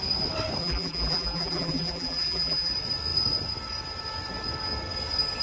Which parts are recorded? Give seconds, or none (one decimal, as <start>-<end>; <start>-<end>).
0.0-0.6; 2.7-5.4

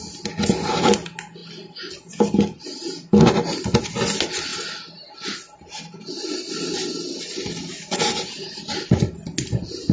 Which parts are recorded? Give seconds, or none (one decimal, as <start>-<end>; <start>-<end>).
0.0-7.6; 8.7-9.9

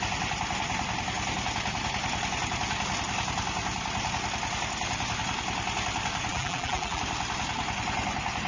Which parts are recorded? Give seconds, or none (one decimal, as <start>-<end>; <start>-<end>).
0.0-6.3; 7.0-8.5

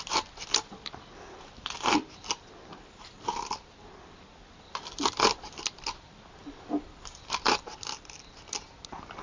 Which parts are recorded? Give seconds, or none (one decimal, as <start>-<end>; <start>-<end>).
0.0-9.2

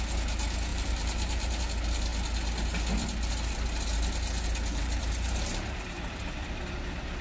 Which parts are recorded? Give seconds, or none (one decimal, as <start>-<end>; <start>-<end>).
0.0-0.7; 1.6-4.7; 6.1-7.2